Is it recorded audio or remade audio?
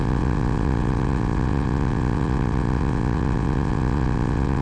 remade